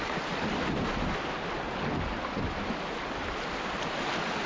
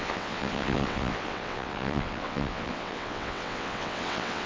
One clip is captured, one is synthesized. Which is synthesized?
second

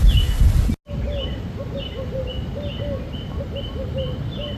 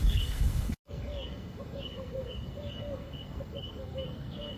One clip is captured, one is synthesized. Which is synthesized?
second